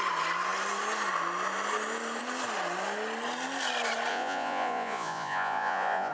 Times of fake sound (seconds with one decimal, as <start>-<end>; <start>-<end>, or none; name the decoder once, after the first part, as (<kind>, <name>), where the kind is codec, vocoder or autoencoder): 4.1-6.1 (vocoder, Vocos)